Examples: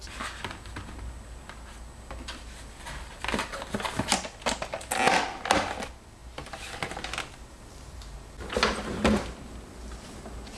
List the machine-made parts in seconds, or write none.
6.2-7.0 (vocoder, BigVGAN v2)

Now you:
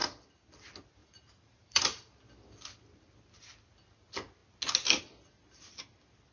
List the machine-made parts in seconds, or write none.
1.0-2.2 (vocoder, BigVGAN v2)

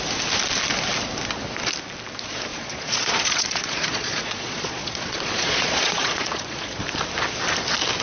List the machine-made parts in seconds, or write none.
2.5-6.8 (vocoder, Vocos)

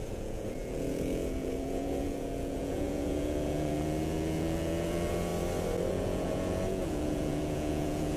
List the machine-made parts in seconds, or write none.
0.0-5.3 (vocoder, Vocos); 5.9-8.2

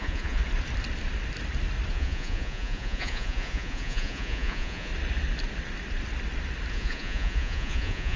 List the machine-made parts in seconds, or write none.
0.0-0.4 (vocoder, Vocos); 1.9-4.9; 6.7-8.2

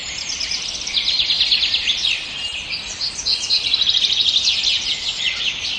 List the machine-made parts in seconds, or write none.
0.0-5.8 (vocoder, BigVGAN v2)

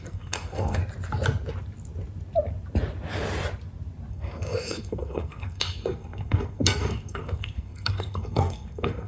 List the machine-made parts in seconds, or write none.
0.0-0.8 (codec, SNAC); 4.1-9.1

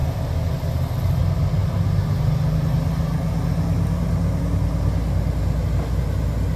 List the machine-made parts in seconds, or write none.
none